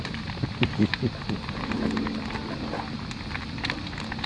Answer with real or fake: real